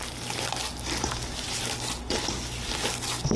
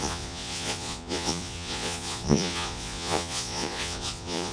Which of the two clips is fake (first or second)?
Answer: second